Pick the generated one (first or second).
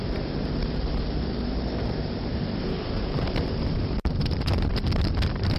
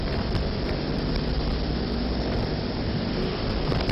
first